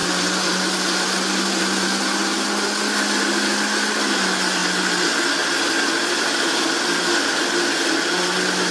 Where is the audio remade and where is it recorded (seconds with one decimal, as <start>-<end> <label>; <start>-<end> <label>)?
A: 0.0-8.7 recorded